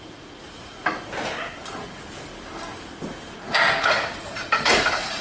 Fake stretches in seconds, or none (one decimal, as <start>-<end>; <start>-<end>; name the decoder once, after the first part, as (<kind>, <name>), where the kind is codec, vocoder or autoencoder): 0.0-0.7 (vocoder, Vocos); 3.8-5.2